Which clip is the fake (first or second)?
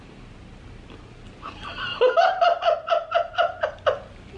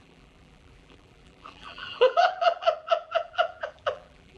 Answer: second